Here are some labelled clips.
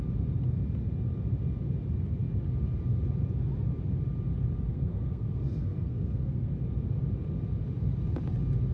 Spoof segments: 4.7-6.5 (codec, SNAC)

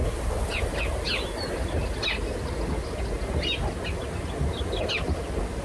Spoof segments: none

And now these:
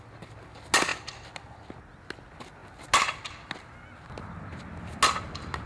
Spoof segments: none